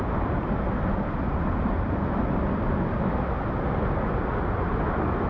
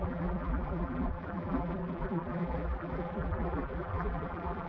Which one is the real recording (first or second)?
first